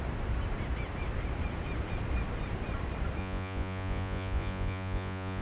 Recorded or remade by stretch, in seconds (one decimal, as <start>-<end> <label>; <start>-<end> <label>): 0.0-3.2 recorded; 3.2-5.4 remade